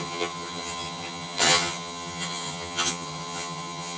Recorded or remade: remade